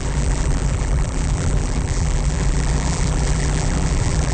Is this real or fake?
fake